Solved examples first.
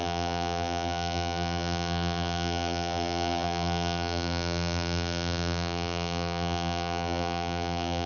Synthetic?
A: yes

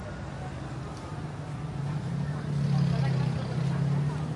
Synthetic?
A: no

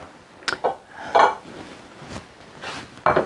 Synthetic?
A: no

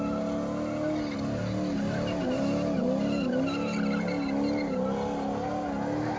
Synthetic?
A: no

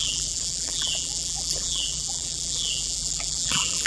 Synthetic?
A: yes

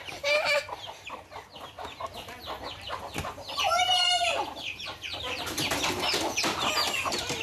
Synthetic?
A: no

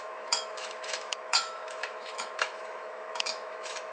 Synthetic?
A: yes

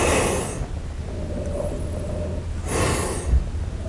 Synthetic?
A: no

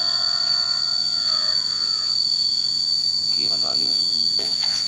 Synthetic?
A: yes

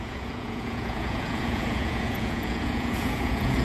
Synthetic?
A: yes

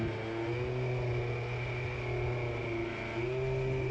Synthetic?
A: no